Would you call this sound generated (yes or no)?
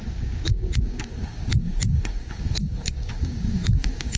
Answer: yes